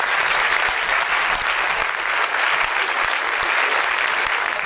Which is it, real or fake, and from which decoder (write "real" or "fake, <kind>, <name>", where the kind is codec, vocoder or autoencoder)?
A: real